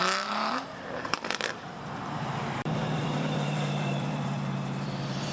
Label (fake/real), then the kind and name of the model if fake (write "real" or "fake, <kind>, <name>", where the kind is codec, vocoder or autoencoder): fake, vocoder, BigVGAN v2